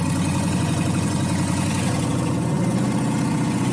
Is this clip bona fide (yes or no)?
no